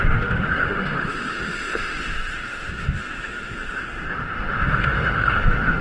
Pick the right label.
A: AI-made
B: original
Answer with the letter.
A